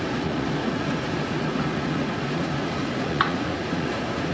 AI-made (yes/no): yes